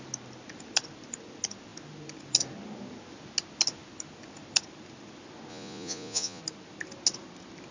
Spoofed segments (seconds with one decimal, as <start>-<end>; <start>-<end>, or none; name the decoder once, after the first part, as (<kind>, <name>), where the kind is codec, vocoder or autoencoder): 5.5-6.4 (vocoder, Vocos)